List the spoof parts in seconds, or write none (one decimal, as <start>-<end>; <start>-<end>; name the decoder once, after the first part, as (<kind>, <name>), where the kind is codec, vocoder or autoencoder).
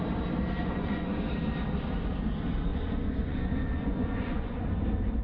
0.6-1.3 (vocoder, Vocos); 2.7-4.6